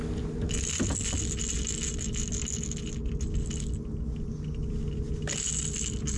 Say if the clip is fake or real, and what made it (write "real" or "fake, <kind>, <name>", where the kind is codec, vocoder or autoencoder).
real